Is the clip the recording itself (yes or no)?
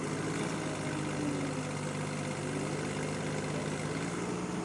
yes